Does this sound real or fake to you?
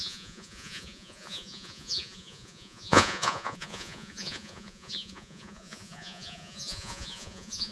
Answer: fake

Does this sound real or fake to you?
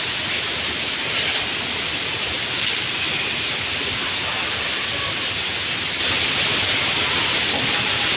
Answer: real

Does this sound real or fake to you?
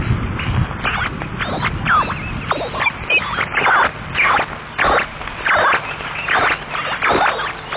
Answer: real